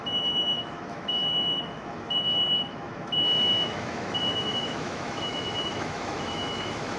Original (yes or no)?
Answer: no